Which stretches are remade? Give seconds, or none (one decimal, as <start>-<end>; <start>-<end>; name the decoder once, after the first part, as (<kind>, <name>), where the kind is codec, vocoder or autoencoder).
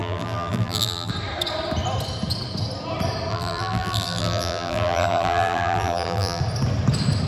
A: 0.0-1.1 (vocoder, BigVGAN v2); 3.3-6.4